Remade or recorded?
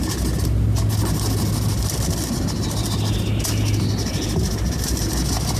recorded